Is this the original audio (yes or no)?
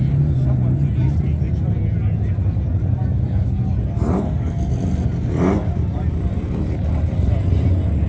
yes